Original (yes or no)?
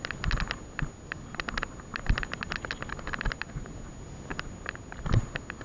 yes